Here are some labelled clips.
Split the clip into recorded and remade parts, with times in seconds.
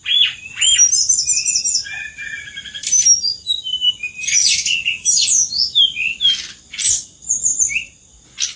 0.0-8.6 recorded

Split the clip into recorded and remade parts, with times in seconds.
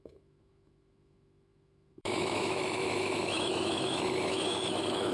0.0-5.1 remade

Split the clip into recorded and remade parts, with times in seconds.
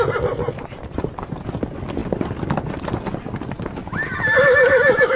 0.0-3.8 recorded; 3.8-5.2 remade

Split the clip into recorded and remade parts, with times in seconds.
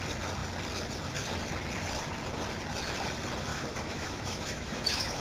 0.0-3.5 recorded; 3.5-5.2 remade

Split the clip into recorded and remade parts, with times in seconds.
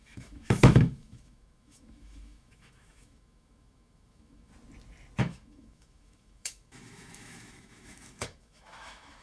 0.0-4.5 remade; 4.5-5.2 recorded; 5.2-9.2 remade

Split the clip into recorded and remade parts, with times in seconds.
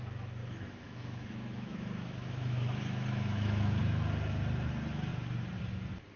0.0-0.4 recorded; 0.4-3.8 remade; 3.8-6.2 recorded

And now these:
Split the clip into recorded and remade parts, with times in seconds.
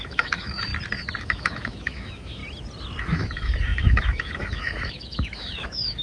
0.0-0.7 remade; 0.7-1.2 recorded; 1.2-2.4 remade; 2.4-3.0 recorded; 3.0-6.0 remade